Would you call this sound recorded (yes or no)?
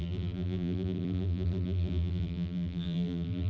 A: no